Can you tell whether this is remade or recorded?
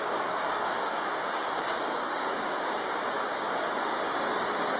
remade